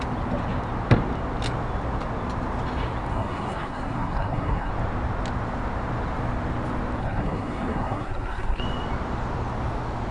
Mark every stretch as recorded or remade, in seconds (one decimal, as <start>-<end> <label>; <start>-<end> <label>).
0.0-3.1 recorded; 3.1-4.7 remade; 4.7-7.0 recorded; 7.0-8.6 remade; 8.6-10.1 recorded